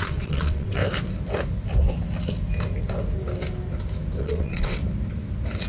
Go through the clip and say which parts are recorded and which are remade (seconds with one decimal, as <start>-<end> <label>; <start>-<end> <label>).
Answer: 0.0-0.8 remade; 0.8-4.2 recorded; 4.2-4.8 remade; 4.8-5.7 recorded